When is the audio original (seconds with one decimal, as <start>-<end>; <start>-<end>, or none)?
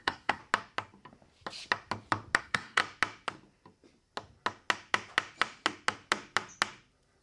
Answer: 0.4-2.4; 2.8-7.2